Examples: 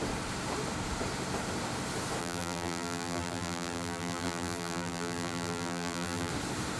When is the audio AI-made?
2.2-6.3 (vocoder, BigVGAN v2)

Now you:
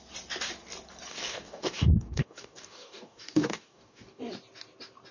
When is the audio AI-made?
1.1-4.2 (codec, DAC)